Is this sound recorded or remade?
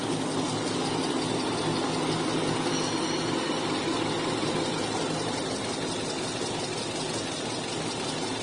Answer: recorded